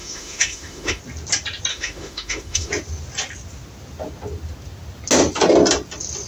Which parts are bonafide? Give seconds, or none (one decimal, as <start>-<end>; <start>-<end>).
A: 1.0-1.7; 2.7-6.3

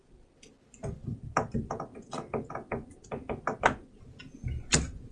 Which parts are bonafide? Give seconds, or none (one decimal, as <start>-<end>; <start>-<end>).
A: 0.0-5.1